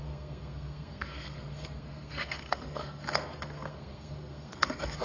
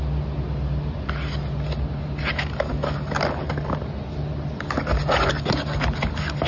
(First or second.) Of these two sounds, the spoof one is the first